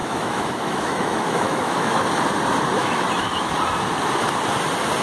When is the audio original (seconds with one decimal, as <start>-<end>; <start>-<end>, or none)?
2.0-2.8; 3.5-5.0